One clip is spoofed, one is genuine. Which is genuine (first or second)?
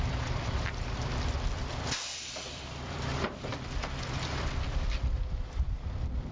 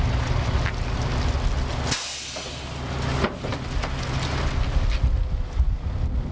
second